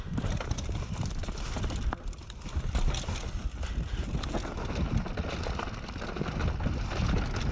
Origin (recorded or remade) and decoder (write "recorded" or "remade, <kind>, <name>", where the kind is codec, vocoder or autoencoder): recorded